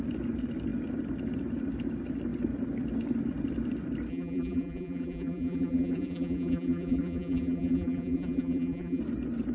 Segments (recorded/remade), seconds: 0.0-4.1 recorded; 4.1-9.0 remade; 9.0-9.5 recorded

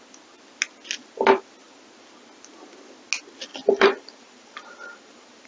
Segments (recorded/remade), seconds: 0.0-3.5 recorded; 3.5-5.5 remade

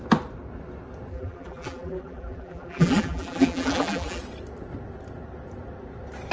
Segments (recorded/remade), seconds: 0.0-1.1 recorded; 1.1-4.2 remade; 4.2-6.3 recorded